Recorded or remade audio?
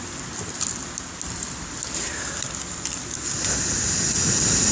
recorded